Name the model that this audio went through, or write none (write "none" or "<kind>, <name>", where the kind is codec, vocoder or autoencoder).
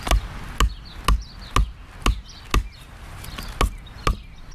none